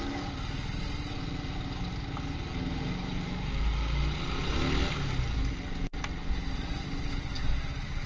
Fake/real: real